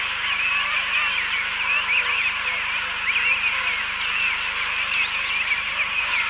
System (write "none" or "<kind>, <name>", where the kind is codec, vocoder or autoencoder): none